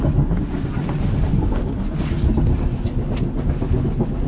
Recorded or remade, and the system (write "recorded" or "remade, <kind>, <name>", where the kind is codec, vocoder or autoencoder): recorded